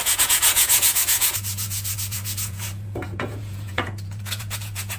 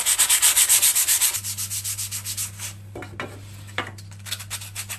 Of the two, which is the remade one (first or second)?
first